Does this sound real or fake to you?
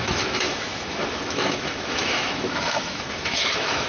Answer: fake